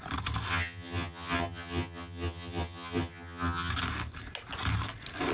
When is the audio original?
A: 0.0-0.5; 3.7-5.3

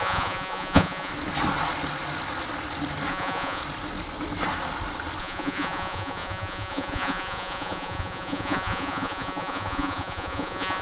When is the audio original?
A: 1.1-3.1; 3.6-5.2

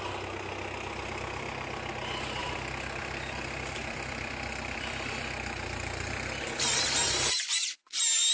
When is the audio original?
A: 0.0-2.4; 7.4-8.3

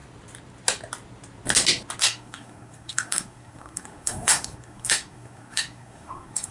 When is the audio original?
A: 0.0-2.0